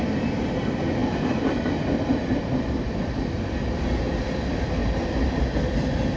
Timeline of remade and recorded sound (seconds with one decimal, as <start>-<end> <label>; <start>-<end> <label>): 0.0-1.0 recorded; 1.0-3.5 remade; 3.5-4.8 recorded; 4.8-5.4 remade; 5.4-6.2 recorded